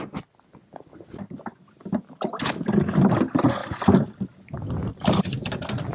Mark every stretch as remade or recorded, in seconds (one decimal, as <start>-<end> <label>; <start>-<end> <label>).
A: 0.0-5.9 recorded